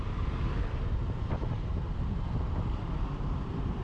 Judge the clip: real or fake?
real